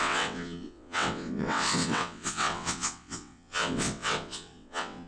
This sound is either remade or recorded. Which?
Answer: remade